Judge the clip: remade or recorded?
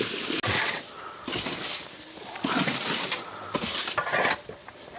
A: recorded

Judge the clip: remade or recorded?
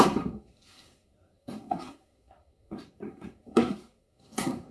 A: remade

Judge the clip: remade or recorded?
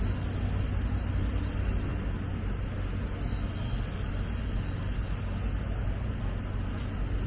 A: recorded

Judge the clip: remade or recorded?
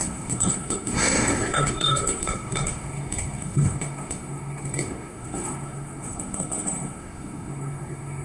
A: remade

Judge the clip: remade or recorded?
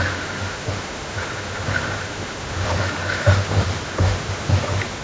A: remade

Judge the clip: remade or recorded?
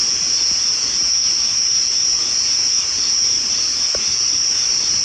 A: recorded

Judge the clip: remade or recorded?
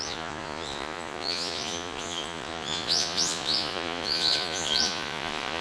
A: remade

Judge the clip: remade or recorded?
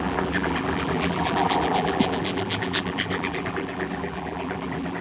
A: remade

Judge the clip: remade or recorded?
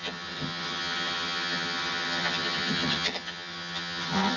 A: remade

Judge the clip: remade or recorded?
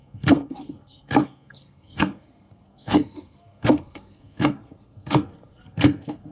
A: remade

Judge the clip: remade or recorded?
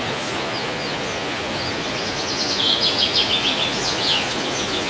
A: remade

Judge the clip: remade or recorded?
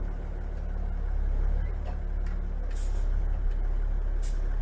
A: recorded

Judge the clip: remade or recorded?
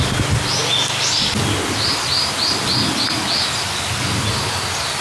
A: recorded